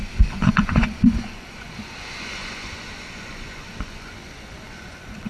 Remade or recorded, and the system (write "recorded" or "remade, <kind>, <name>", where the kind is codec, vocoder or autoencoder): remade, vocoder, Vocos